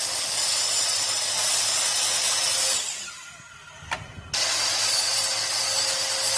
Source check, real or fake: real